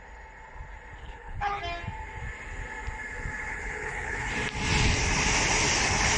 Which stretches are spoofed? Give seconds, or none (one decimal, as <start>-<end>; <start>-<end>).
1.0-1.6; 3.5-4.3